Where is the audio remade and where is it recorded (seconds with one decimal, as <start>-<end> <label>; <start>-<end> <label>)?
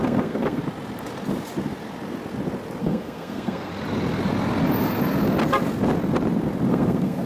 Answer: 0.0-0.6 remade; 0.6-2.8 recorded; 2.8-3.7 remade; 3.7-6.7 recorded; 6.7-7.3 remade